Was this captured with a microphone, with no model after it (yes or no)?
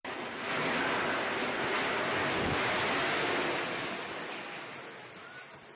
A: yes